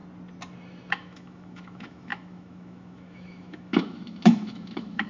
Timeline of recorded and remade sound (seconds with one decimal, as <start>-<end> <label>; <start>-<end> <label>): 0.0-0.9 recorded; 0.9-5.1 remade